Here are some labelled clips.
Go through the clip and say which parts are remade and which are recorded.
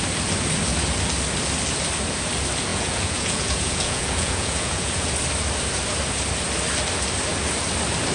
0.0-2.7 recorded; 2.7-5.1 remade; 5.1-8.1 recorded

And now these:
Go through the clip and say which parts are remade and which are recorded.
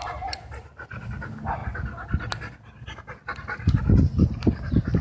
0.0-5.0 recorded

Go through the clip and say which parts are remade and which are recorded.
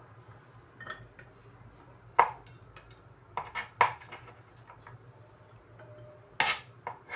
0.0-7.2 recorded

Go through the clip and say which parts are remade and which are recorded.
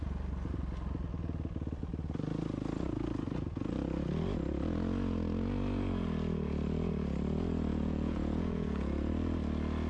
0.0-7.7 recorded; 7.7-9.1 remade; 9.1-9.9 recorded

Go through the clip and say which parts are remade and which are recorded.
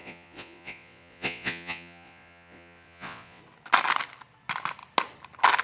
0.0-3.4 remade; 3.4-5.6 recorded